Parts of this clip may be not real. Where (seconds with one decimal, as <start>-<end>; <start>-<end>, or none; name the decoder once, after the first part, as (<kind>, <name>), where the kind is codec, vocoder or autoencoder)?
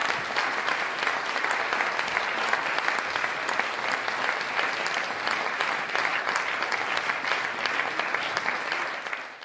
none